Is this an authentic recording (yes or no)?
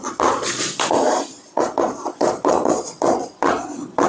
no